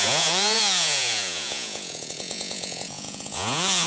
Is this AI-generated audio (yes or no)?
yes